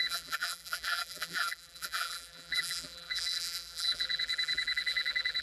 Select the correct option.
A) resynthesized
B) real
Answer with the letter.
A